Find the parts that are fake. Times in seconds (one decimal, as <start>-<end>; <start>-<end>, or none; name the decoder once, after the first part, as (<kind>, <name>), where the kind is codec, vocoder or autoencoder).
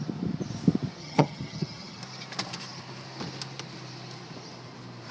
1.0-2.0 (vocoder, HiFi-GAN)